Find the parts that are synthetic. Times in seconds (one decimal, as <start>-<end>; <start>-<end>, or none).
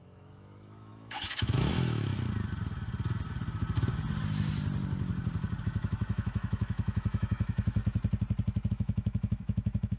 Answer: 0.0-2.1; 5.6-7.8; 8.7-10.0